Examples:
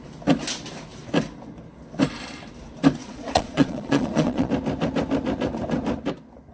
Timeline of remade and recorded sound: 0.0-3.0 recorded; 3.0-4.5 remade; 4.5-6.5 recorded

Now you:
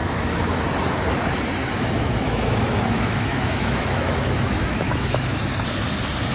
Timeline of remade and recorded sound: 0.0-0.6 remade; 0.6-1.6 recorded; 1.6-5.4 remade; 5.4-6.3 recorded

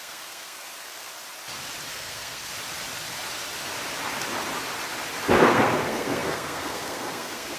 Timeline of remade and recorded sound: 0.0-1.1 remade; 1.1-1.9 recorded; 1.9-2.5 remade; 2.5-5.4 recorded; 5.4-7.6 remade

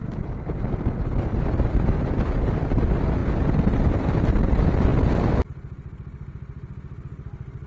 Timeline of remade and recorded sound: 0.0-7.7 recorded

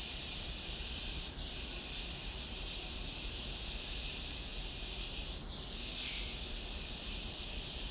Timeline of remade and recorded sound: 0.0-4.5 remade; 4.5-6.4 recorded; 6.4-7.9 remade

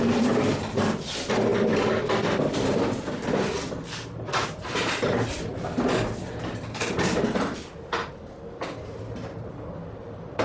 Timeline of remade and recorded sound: 0.0-10.4 recorded

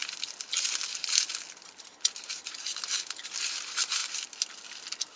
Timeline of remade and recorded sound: 0.0-5.2 recorded